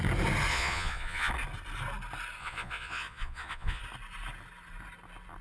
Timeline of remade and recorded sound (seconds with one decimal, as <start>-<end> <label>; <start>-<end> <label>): 0.0-0.5 recorded; 0.5-1.3 remade; 1.3-2.4 recorded; 2.4-3.8 remade; 3.8-5.4 recorded